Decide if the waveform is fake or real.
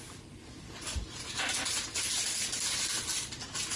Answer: real